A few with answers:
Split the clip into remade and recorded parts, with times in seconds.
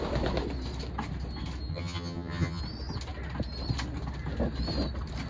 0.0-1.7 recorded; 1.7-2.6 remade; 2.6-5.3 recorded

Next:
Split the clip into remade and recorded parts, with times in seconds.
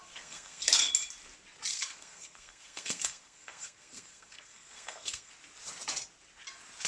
0.0-0.9 remade; 0.9-1.7 recorded; 1.7-5.3 remade; 5.3-6.9 recorded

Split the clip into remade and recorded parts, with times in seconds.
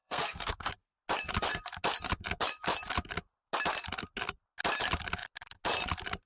0.0-0.7 remade; 0.7-6.3 recorded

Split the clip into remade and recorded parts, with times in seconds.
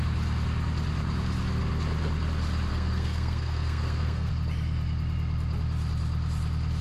0.0-2.7 recorded; 2.7-4.3 remade; 4.3-6.8 recorded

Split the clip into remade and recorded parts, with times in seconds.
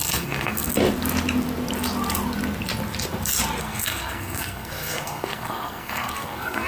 0.0-0.7 remade; 0.7-3.6 recorded; 3.6-6.7 remade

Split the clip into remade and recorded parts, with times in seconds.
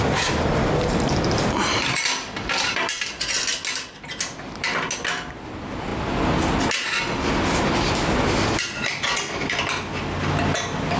0.0-11.0 recorded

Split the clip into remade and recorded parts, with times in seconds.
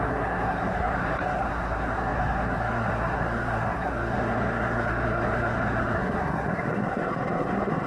0.0-7.9 remade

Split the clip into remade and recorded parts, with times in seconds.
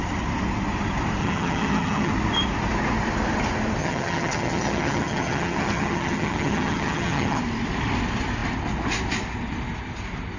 0.0-1.2 recorded; 1.2-2.1 remade; 2.1-3.8 recorded; 3.8-7.4 remade; 7.4-10.4 recorded